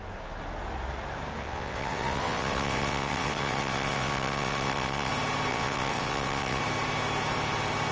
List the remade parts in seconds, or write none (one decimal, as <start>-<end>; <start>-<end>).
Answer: 1.4-5.1; 5.5-6.6